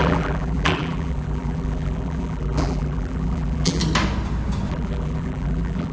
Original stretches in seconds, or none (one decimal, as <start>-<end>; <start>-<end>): 3.8-4.7